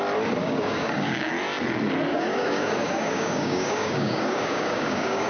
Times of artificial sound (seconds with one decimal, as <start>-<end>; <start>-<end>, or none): 0.4-1.3; 2.1-5.3